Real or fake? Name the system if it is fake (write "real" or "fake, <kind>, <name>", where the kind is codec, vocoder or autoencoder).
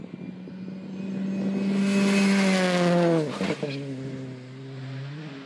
real